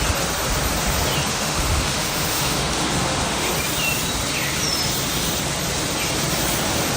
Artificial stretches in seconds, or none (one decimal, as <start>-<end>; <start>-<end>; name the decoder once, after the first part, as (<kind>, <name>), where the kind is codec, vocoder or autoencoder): 1.3-3.5 (autoencoder, DAC-VAE)